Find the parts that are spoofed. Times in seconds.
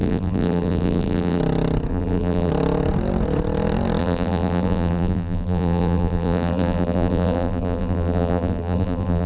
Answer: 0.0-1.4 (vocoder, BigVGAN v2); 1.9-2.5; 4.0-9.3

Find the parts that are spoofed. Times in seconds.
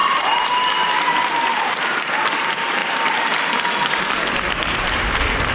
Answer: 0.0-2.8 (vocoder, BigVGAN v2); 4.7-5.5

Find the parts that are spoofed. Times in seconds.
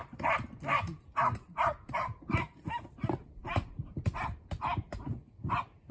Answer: 3.4-3.9 (vocoder, BigVGAN v2)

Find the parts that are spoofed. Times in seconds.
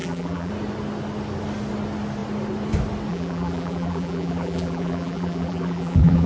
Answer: 0.0-0.5 (vocoder, BigVGAN v2); 3.1-6.3